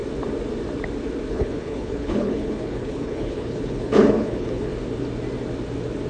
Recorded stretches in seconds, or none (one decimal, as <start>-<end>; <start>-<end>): 0.0-1.3; 4.7-6.1